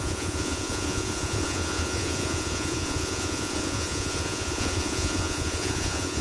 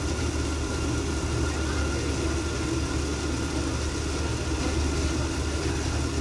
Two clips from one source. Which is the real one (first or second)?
second